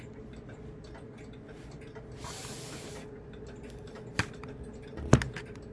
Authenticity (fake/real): real